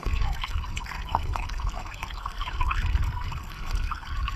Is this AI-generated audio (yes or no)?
yes